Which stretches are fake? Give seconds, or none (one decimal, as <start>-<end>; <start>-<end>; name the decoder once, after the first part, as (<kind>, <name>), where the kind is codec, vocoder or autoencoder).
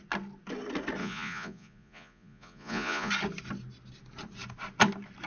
1.0-3.1 (vocoder, Vocos)